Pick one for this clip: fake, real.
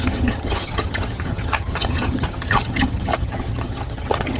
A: fake